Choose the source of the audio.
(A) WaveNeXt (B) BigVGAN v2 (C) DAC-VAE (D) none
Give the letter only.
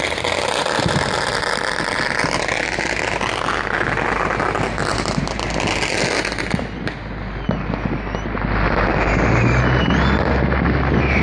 D